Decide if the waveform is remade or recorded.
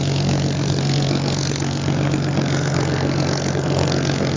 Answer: remade